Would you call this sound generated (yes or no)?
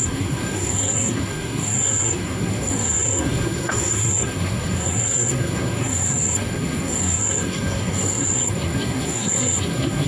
yes